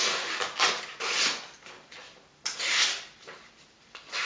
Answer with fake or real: real